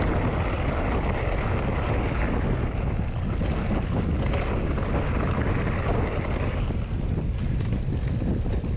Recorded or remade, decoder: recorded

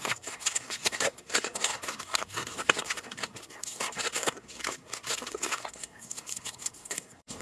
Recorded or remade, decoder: remade, codec, SNAC